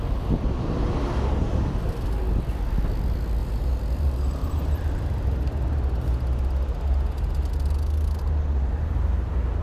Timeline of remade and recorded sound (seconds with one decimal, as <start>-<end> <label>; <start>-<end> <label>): 0.0-3.4 recorded; 3.4-5.4 remade; 5.4-9.6 recorded